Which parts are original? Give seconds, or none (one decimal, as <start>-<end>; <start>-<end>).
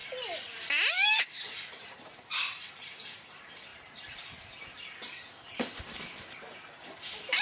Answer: 2.7-3.7; 4.5-7.4